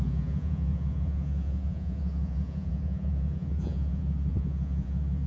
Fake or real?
fake